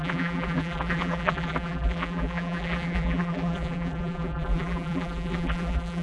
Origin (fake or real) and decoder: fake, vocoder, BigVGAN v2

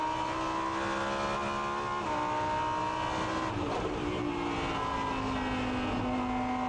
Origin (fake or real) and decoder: real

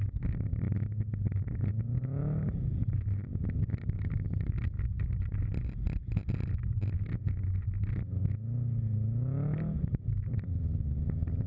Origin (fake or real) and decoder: real